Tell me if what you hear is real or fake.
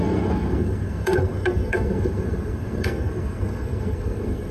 fake